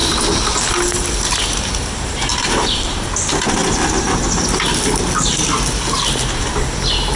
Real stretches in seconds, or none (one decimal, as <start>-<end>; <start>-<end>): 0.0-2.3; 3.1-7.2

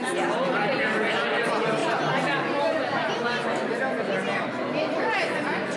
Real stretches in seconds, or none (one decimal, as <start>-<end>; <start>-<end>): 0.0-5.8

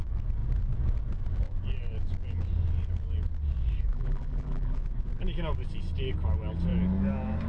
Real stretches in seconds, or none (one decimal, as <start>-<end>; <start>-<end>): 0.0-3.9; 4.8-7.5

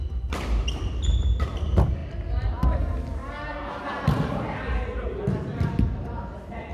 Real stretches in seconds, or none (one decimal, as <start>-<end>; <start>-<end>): 0.0-6.7

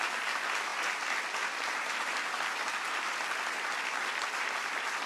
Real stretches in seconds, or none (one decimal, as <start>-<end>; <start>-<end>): 0.0-5.1

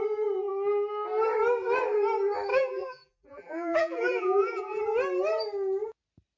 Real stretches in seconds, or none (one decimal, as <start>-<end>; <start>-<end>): 0.0-2.5; 4.8-6.4